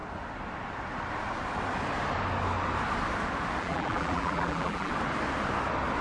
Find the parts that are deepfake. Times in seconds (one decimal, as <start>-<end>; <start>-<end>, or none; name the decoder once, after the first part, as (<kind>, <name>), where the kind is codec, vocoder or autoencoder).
3.6-4.9 (vocoder, BigVGAN v2)